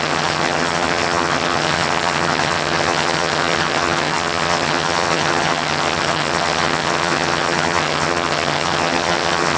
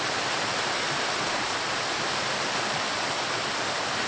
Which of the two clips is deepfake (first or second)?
first